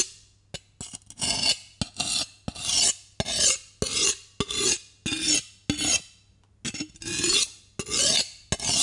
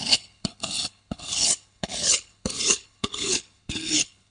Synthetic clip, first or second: second